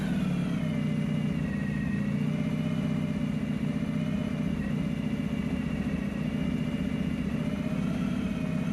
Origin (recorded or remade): recorded